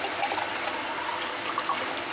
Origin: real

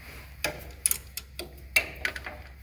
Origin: real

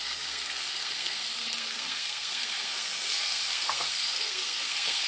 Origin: fake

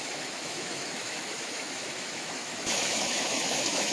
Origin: fake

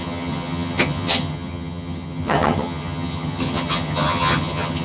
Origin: fake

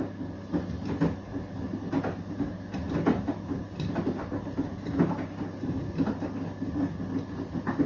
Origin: real